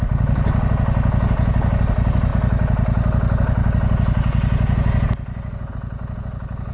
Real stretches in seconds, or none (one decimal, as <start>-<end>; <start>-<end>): 0.0-6.7